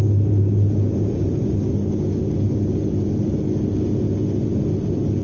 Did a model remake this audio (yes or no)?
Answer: no